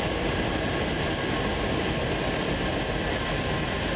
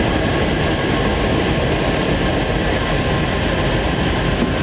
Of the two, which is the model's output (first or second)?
second